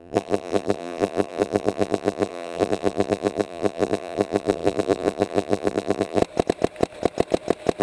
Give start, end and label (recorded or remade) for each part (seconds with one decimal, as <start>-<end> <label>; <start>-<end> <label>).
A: 0.0-6.2 remade; 6.2-7.8 recorded